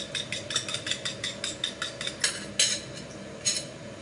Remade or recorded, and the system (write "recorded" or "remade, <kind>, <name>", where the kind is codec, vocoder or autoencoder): recorded